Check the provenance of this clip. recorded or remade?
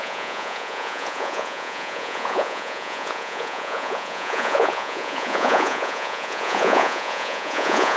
remade